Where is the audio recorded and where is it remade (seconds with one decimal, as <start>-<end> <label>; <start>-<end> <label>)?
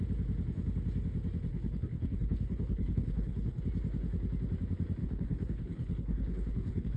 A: 0.0-1.5 recorded; 1.5-3.6 remade; 3.6-5.0 recorded; 5.0-7.0 remade